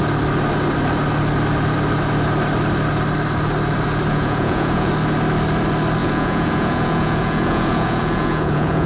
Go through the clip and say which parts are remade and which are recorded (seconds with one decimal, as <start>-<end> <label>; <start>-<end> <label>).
0.0-4.1 recorded; 4.1-4.9 remade; 4.9-6.0 recorded; 6.0-8.9 remade